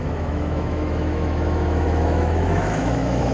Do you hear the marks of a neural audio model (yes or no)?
yes